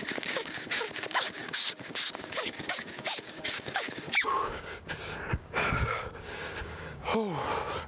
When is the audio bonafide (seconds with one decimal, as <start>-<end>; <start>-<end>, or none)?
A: 7.1-7.9